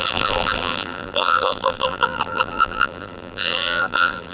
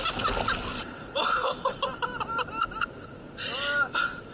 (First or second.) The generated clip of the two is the first